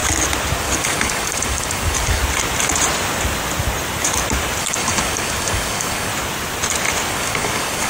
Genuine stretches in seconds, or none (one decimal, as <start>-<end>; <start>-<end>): 0.0-0.6; 2.2-4.6; 6.1-7.1